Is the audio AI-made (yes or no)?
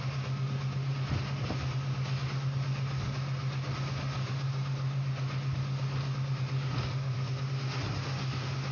no